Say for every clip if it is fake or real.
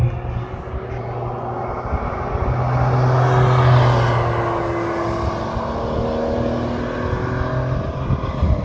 real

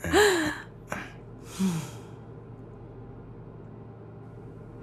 real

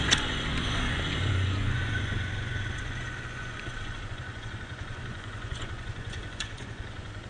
fake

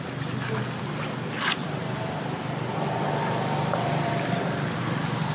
real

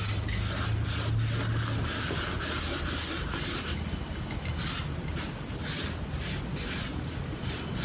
real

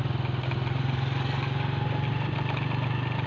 real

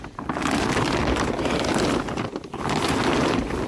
real